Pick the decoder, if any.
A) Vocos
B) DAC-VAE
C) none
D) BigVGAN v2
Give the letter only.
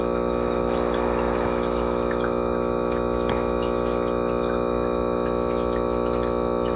B